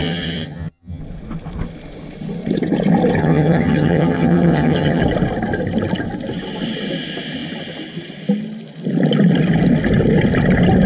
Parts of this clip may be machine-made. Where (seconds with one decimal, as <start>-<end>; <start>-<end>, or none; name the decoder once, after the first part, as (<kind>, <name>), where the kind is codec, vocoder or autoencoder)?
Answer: 0.0-1.0 (vocoder, HiFi-GAN); 3.2-5.0